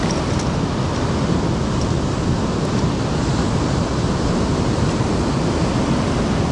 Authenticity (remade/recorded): recorded